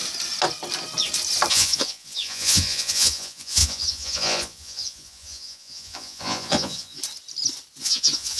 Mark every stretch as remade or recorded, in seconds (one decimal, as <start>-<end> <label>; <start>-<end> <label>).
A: 0.0-1.5 recorded; 1.5-7.0 remade; 7.0-7.8 recorded; 7.8-8.4 remade